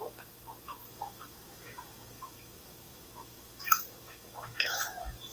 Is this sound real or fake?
fake